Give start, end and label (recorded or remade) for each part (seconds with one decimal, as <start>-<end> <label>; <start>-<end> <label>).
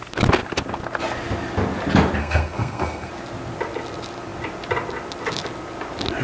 0.0-2.2 recorded; 2.2-3.1 remade; 3.1-6.2 recorded